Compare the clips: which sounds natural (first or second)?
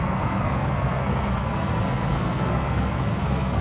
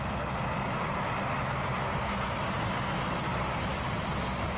second